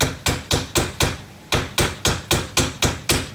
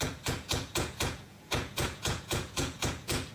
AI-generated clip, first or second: second